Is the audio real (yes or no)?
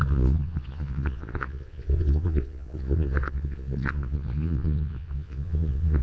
no